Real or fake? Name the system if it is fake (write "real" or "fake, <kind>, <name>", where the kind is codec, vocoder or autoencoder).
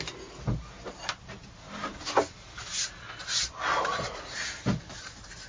real